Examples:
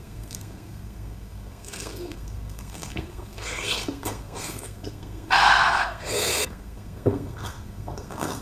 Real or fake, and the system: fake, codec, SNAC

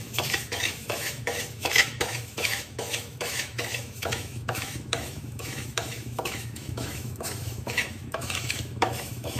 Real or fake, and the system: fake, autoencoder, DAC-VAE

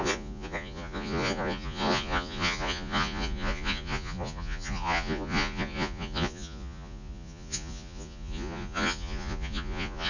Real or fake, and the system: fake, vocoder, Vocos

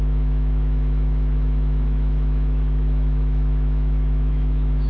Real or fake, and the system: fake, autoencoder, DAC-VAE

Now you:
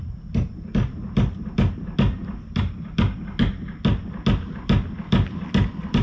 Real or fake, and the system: real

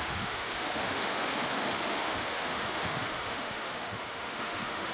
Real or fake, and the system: fake, autoencoder, DAC-VAE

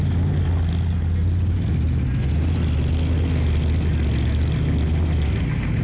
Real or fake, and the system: real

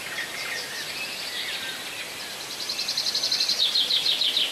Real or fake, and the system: real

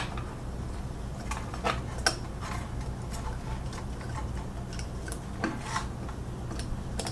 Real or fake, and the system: real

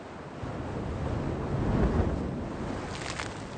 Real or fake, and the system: real